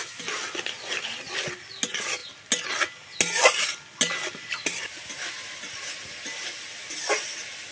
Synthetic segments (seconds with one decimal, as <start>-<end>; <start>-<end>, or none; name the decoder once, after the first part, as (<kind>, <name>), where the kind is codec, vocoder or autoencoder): none